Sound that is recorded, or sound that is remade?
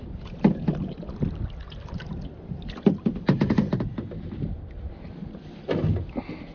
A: recorded